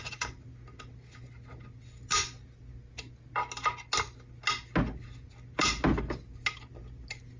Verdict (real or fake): real